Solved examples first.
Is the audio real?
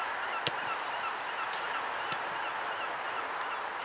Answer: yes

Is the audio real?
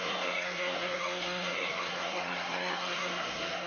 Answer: no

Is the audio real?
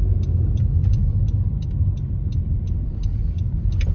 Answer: yes